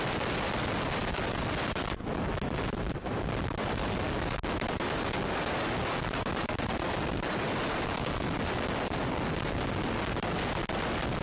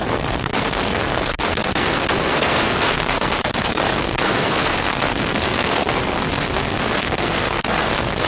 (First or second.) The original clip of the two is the first